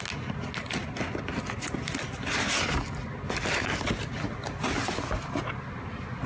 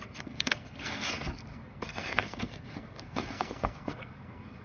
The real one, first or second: first